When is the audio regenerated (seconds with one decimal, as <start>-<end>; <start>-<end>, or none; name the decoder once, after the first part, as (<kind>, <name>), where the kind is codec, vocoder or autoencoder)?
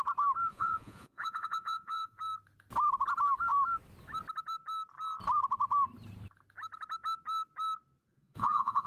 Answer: 0.5-2.2 (vocoder, Vocos); 8.0-8.9